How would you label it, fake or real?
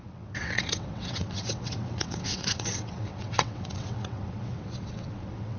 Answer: fake